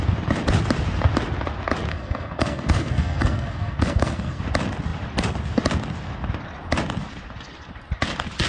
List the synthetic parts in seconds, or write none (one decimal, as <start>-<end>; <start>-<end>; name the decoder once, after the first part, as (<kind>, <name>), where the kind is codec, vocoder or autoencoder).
1.9-4.4 (codec, SNAC)